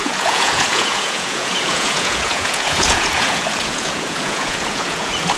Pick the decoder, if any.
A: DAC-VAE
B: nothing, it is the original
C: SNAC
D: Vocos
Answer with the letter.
D